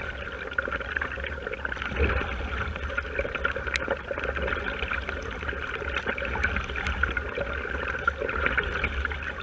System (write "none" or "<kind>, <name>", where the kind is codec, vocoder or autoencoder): none